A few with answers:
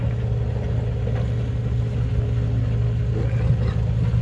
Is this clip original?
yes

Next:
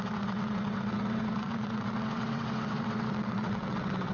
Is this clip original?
no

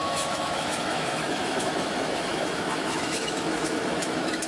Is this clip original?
no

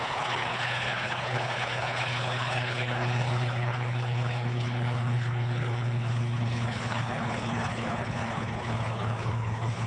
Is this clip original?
no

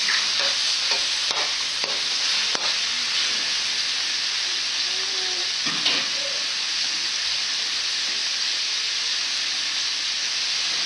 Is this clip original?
yes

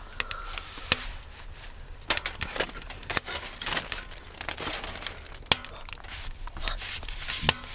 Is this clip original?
yes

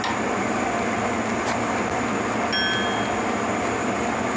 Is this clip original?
yes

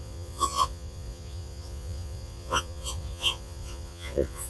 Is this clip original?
no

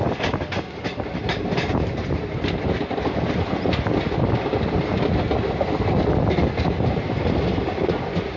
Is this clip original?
yes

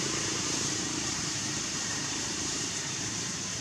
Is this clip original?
no